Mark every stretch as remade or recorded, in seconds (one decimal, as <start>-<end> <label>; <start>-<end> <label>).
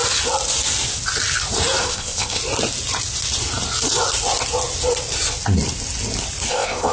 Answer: 0.0-1.8 recorded; 1.8-2.4 remade; 2.4-6.5 recorded; 6.5-6.9 remade